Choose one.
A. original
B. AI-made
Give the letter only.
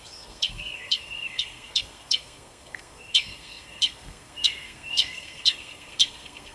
B